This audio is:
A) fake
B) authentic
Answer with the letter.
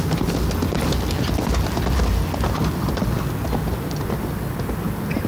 B